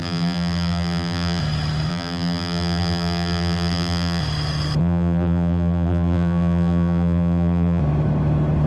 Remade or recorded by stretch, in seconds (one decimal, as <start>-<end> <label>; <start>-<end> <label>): 0.0-1.4 remade; 1.4-1.9 recorded; 1.9-4.2 remade; 4.2-4.8 recorded; 4.8-7.8 remade; 7.8-8.7 recorded